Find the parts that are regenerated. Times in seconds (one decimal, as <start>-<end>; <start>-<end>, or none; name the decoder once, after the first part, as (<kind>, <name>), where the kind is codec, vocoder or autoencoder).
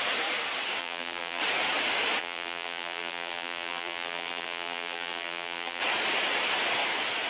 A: 0.8-1.4 (vocoder, BigVGAN v2); 2.2-5.8